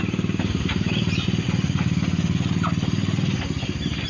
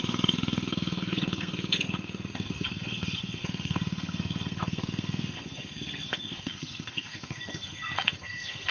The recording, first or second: first